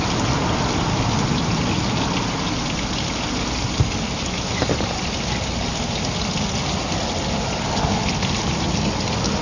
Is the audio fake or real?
real